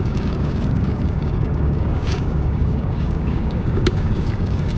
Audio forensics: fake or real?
fake